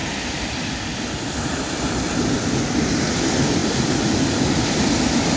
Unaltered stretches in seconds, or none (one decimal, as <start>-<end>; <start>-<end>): 0.0-5.4